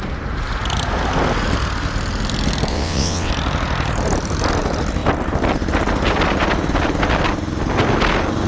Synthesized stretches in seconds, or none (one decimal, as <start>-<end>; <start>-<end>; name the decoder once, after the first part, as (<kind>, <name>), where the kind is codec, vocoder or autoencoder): 2.7-3.3 (vocoder, WaveNeXt)